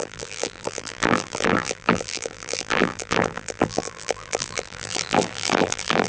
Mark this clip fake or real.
fake